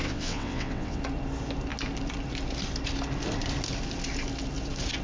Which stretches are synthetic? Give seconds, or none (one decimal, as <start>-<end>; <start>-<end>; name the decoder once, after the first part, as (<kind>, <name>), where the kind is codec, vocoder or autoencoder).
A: 0.0-1.0 (vocoder, WaveNeXt)